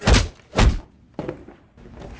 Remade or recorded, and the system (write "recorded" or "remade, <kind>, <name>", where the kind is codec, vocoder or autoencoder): recorded